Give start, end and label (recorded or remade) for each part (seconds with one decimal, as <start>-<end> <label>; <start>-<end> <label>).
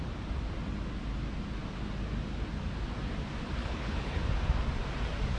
0.0-3.6 recorded; 3.6-4.2 remade; 4.2-5.4 recorded